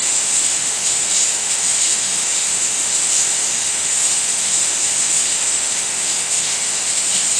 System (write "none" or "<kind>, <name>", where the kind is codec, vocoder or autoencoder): autoencoder, DAC-VAE